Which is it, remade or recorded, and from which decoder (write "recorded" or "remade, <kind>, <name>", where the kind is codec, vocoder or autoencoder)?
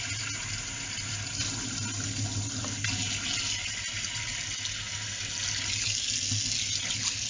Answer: recorded